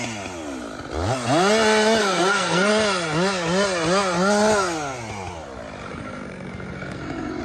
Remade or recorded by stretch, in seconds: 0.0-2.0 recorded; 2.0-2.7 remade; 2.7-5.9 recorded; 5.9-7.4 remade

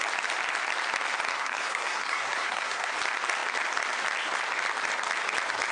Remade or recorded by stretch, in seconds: 0.0-1.3 recorded; 1.3-2.9 remade; 2.9-5.7 recorded

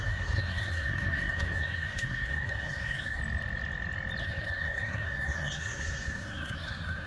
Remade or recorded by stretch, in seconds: 0.0-3.2 remade; 3.2-4.2 recorded; 4.2-7.1 remade

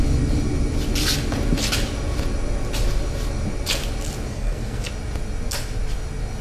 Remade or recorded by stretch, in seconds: 0.0-4.3 recorded; 4.3-4.9 remade; 4.9-6.4 recorded

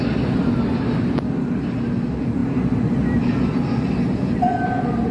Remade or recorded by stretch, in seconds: 0.0-5.1 recorded

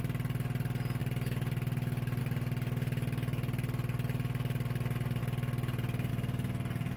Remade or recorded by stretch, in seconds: 0.0-7.0 recorded